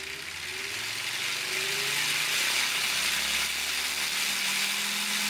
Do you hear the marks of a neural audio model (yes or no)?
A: no